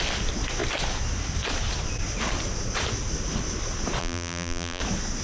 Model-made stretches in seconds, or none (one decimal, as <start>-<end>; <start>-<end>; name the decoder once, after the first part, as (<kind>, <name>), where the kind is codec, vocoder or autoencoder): 4.0-4.8 (vocoder, BigVGAN v2)